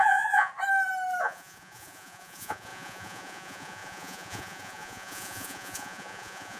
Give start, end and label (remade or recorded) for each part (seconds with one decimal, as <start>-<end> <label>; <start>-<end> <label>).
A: 0.0-0.5 remade; 0.5-1.2 recorded; 1.2-6.6 remade